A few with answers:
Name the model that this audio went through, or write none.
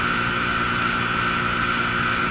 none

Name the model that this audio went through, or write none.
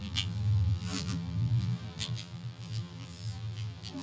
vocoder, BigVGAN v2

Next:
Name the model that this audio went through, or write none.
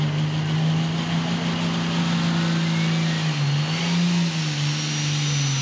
none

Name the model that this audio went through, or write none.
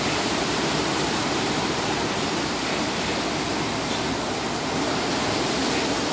vocoder, BigVGAN v2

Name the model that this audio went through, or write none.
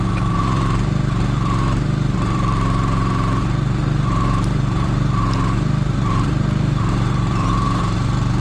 vocoder, BigVGAN v2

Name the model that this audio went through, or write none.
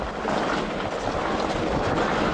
none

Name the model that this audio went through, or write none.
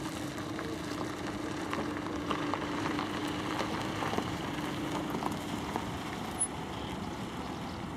none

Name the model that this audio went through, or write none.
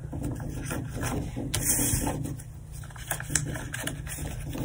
none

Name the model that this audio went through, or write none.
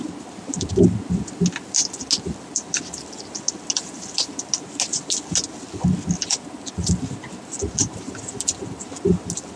none